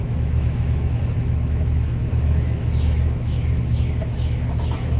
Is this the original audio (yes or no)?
no